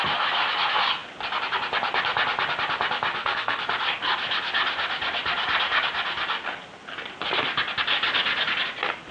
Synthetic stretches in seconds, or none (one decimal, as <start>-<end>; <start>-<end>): 3.1-3.6